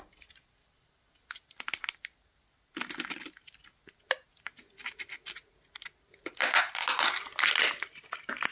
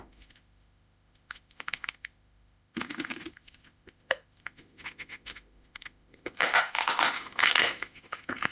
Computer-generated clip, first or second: second